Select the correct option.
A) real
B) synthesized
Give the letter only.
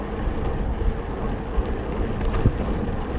A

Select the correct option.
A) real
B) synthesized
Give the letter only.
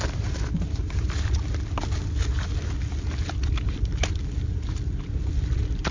A